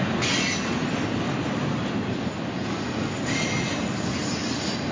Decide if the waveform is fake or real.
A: real